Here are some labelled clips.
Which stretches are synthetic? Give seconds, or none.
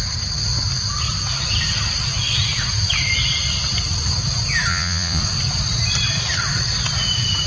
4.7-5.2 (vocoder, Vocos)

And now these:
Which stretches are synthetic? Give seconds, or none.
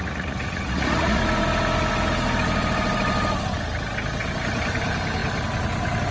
0.0-1.2 (vocoder, Vocos)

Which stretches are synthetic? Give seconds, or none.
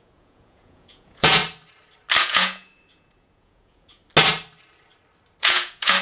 0.0-1.4 (vocoder, Vocos); 2.2-4.0; 5.4-6.0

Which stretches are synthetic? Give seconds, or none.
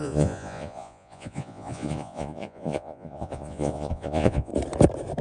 0.0-4.5 (vocoder, Vocos)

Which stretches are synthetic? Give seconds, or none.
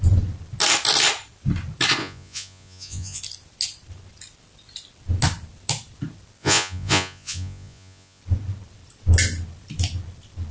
2.0-3.2 (vocoder, Vocos); 6.4-8.2